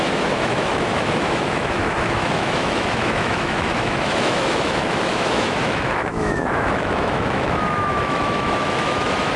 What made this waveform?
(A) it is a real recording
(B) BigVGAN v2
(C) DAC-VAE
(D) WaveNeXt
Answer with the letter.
C